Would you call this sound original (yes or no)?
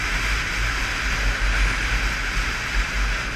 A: yes